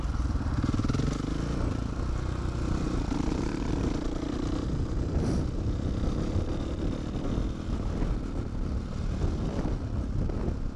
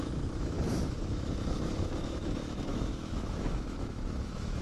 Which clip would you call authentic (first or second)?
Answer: first